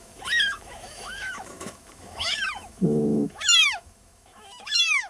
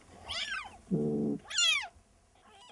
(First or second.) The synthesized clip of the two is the first